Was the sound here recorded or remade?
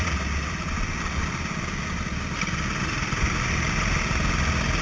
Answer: recorded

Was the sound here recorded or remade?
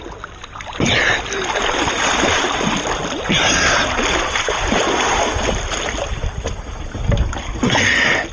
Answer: recorded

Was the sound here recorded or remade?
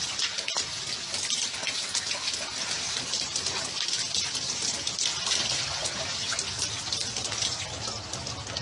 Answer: recorded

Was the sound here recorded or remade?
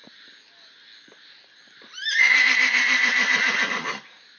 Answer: recorded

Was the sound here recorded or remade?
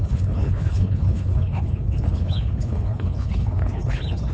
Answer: remade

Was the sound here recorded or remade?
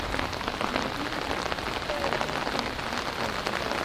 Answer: recorded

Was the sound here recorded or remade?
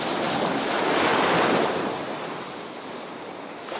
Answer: recorded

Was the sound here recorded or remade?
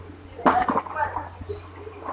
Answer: recorded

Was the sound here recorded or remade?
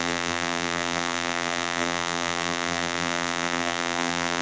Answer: remade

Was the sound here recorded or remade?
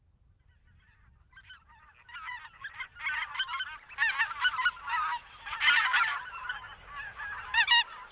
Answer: recorded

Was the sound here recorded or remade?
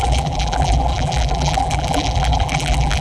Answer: remade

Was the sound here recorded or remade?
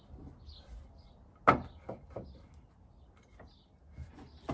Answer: recorded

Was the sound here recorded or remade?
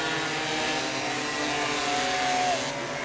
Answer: recorded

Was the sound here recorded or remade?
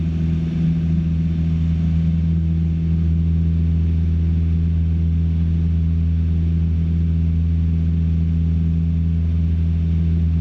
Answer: recorded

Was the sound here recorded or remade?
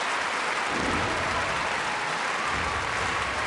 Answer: recorded